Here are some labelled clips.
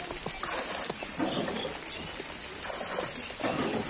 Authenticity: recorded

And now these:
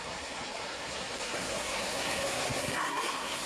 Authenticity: remade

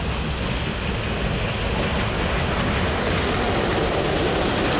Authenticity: recorded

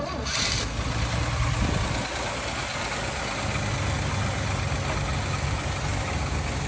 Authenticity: recorded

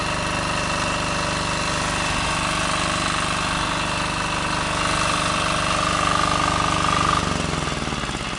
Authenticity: recorded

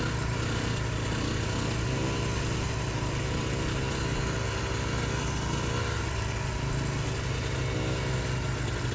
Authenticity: recorded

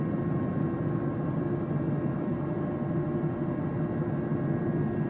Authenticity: recorded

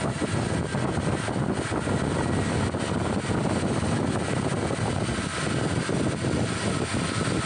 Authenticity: recorded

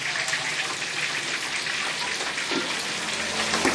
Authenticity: recorded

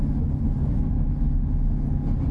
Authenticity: recorded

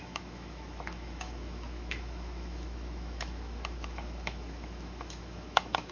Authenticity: remade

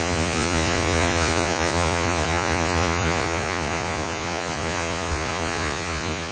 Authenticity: remade